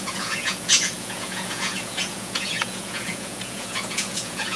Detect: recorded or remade remade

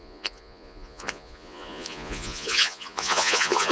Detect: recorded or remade remade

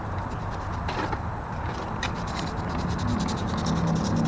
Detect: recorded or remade recorded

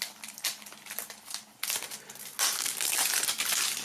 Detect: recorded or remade recorded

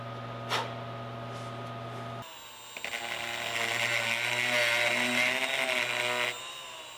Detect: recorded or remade recorded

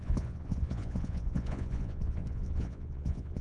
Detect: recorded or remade remade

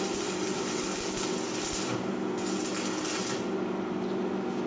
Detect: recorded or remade recorded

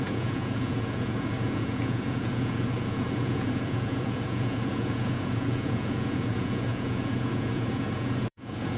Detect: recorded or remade remade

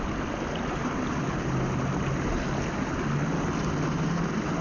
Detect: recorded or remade recorded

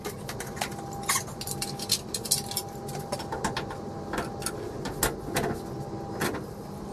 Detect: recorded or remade recorded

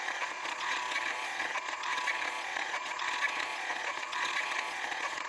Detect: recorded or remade remade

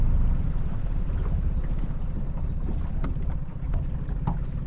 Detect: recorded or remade recorded